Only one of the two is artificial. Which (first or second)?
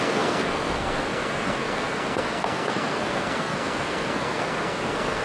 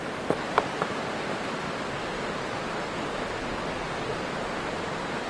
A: first